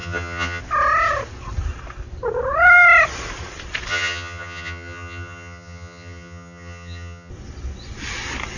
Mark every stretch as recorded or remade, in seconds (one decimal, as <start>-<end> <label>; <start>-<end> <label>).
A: 0.0-0.6 remade; 0.6-3.9 recorded; 3.9-7.3 remade; 7.3-8.6 recorded